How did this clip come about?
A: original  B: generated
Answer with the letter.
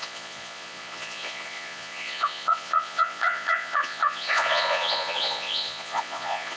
B